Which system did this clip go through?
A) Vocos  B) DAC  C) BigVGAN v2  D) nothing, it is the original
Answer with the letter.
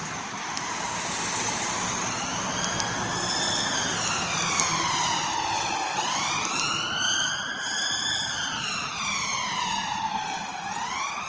D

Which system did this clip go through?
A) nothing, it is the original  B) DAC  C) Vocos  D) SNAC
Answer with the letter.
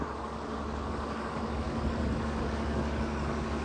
B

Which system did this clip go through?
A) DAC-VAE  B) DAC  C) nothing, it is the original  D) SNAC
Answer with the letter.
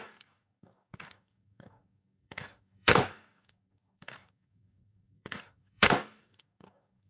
B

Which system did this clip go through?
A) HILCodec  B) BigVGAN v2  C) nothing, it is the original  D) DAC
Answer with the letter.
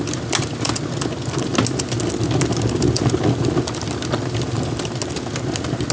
C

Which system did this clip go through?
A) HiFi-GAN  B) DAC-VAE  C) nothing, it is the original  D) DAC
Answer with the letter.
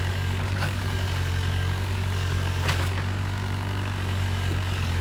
D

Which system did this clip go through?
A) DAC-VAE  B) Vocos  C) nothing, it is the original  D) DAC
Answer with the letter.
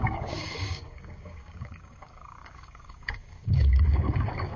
D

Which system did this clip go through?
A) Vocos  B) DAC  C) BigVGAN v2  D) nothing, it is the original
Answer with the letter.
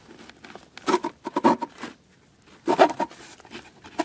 D